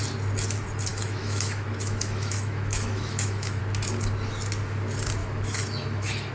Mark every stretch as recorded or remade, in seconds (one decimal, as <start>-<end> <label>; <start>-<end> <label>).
0.0-0.9 recorded; 0.9-3.6 remade; 3.6-5.2 recorded; 5.2-6.3 remade